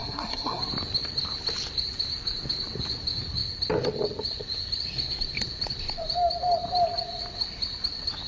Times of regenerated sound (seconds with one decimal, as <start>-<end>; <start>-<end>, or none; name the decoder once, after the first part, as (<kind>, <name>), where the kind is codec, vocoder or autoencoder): 0.0-0.6 (codec, SNAC)